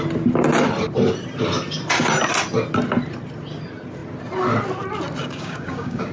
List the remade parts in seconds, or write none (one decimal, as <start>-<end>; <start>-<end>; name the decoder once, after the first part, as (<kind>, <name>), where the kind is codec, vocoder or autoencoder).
5.2-6.1 (codec, DAC)